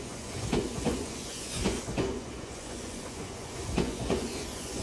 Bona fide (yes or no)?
no